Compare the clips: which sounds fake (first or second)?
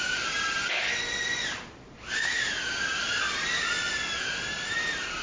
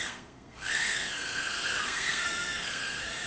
second